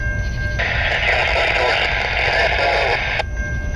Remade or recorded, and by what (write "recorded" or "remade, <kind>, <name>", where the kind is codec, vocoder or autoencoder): recorded